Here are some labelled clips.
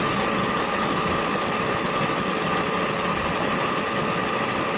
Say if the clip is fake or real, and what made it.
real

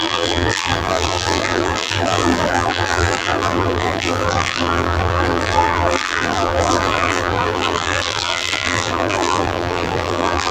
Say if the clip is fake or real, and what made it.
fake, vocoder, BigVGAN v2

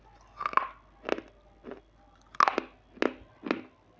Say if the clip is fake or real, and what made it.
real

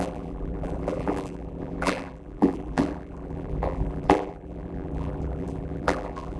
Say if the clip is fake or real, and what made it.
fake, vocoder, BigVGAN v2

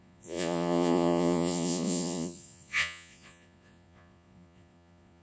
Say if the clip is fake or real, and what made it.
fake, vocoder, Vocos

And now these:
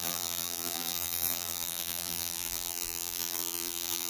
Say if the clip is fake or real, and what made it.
fake, vocoder, BigVGAN v2